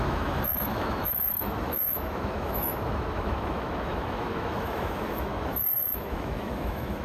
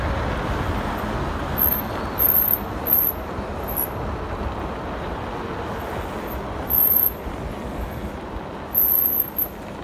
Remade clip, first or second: first